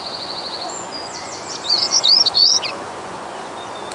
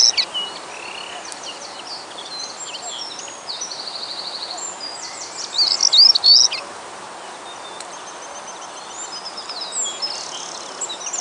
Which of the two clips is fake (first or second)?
first